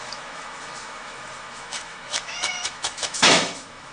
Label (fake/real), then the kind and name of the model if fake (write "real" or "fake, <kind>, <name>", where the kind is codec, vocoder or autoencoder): fake, autoencoder, DAC-VAE